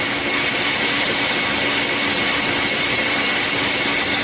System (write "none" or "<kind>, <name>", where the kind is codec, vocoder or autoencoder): none